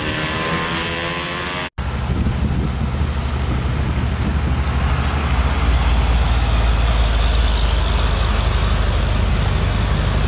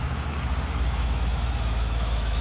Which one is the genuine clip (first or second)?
first